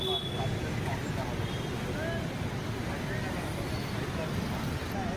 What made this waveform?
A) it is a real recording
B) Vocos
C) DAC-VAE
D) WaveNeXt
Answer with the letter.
A